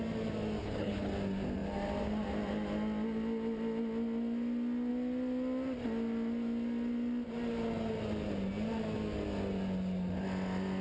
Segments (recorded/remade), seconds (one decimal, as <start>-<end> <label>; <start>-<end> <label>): 0.0-0.6 recorded; 0.6-1.1 remade; 1.1-10.8 recorded